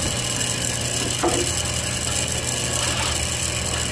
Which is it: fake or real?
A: real